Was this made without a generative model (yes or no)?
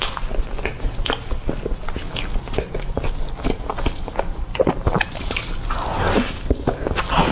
yes